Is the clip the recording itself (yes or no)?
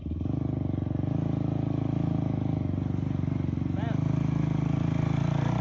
yes